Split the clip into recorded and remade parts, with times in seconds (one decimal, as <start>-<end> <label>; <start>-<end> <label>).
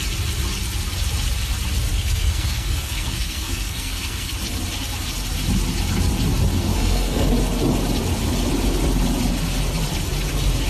0.0-1.9 recorded; 1.9-4.3 remade; 4.3-6.7 recorded; 6.7-7.3 remade; 7.3-10.7 recorded